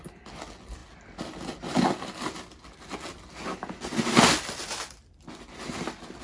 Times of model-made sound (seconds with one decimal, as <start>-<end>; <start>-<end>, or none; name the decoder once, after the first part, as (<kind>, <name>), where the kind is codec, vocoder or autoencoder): none